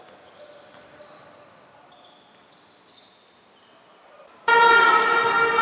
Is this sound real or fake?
real